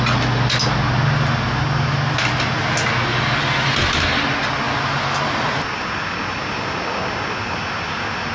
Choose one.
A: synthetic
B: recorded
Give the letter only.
B